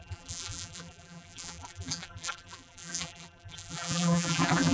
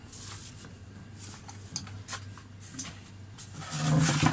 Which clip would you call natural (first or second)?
second